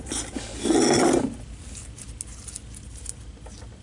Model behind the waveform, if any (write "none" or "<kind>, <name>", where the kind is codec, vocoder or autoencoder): none